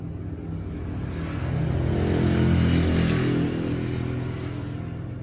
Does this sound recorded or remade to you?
recorded